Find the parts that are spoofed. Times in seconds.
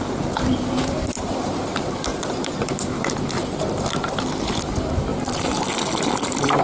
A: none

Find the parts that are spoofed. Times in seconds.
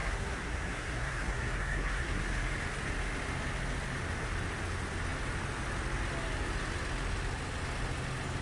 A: 0.0-2.2 (codec, SNAC)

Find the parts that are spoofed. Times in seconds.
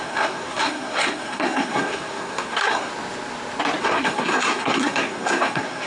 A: 0.0-2.9 (codec, SNAC); 3.8-5.9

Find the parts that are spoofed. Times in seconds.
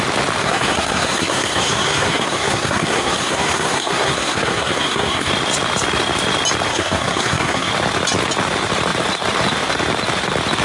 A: 0.4-5.3 (codec, SNAC); 6.7-7.7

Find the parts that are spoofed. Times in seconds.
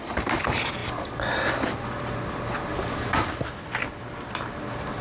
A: none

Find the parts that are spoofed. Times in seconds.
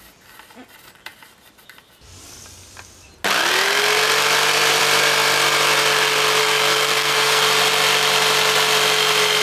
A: 6.4-7.4 (codec, SNAC)